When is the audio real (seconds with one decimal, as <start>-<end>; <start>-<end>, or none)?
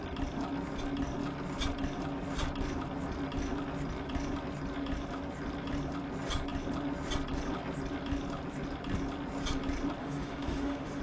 0.0-10.0